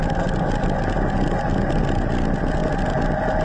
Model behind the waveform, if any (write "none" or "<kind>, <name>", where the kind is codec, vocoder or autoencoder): none